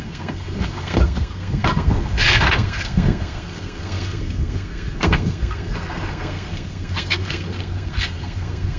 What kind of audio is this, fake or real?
fake